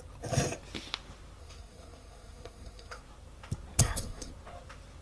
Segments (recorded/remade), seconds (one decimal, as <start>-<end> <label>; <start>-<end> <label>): 0.0-1.4 recorded; 1.4-3.0 remade; 3.0-3.8 recorded; 3.8-4.3 remade; 4.3-5.0 recorded